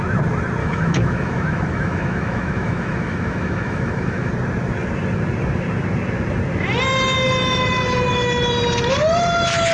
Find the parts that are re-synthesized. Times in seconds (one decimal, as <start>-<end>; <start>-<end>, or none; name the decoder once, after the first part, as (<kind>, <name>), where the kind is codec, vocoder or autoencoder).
0.6-4.3 (autoencoder, DAC-VAE)